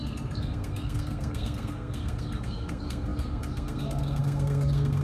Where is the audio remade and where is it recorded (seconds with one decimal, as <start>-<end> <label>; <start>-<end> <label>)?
0.0-5.0 remade